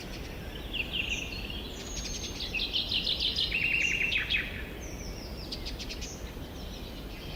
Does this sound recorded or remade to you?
recorded